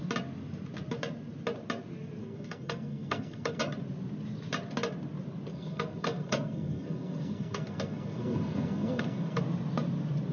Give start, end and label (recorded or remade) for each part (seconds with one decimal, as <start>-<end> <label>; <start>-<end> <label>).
0.0-2.2 recorded; 2.2-3.6 remade; 3.6-5.5 recorded; 5.5-9.4 remade; 9.4-10.3 recorded